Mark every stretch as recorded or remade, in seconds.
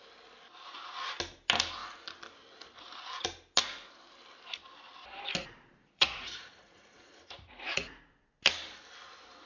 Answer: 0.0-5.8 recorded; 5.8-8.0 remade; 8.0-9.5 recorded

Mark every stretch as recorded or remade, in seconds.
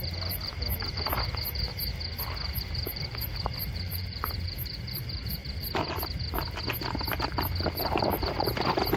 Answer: 0.0-1.7 remade; 1.7-2.6 recorded; 2.6-5.4 remade; 5.4-7.2 recorded; 7.2-9.0 remade